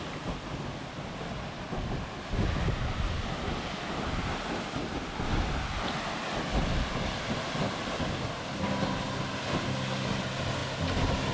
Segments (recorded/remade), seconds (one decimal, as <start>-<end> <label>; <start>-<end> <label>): 0.0-11.3 recorded